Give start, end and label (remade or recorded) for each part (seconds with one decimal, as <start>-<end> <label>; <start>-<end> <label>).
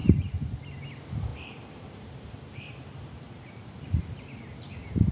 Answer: 0.0-0.5 remade; 0.5-1.3 recorded; 1.3-4.0 remade; 4.0-5.1 recorded